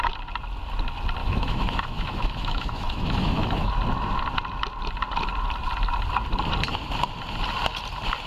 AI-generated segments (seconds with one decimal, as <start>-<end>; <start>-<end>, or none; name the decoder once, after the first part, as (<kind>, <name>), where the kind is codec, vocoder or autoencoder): 1.2-3.7 (autoencoder, DAC-VAE)